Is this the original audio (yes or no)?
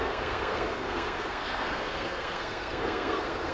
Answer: no